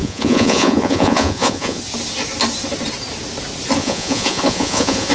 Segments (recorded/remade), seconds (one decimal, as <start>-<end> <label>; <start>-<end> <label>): 0.0-1.8 remade; 1.8-3.8 recorded; 3.8-5.1 remade